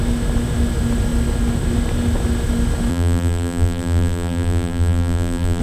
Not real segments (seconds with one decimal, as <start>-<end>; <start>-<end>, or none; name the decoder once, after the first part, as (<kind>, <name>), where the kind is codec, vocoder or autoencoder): 2.9-5.6 (vocoder, BigVGAN v2)